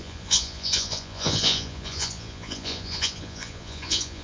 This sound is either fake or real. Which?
fake